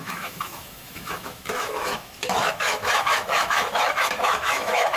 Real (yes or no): no